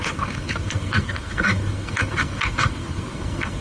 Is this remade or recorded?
remade